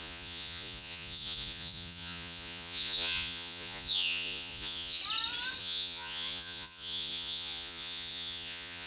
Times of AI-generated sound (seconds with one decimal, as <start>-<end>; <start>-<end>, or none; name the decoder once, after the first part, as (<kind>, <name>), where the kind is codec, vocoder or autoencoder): 0.0-5.0 (vocoder, Vocos); 5.6-8.9